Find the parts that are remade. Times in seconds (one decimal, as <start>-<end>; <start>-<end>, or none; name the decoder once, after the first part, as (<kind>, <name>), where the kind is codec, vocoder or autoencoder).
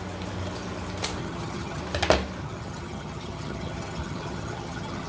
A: 1.2-1.8 (vocoder, HiFi-GAN); 2.4-5.1